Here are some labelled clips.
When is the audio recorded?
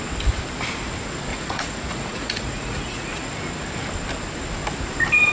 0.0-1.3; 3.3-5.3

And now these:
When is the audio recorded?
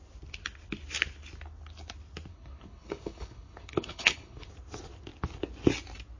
0.0-2.3; 4.5-6.2